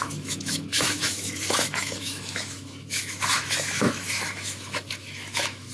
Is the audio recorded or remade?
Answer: remade